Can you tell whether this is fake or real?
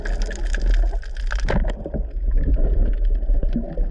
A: real